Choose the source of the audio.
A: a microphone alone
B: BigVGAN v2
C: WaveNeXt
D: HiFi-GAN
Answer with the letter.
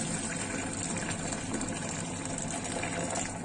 A